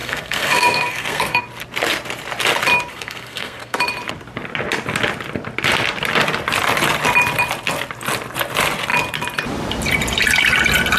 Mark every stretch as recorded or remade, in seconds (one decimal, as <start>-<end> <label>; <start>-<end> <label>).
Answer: 0.0-1.4 remade; 1.4-2.9 recorded; 2.9-3.8 remade; 3.8-11.0 recorded